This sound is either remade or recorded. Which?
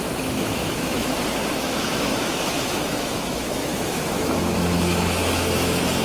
remade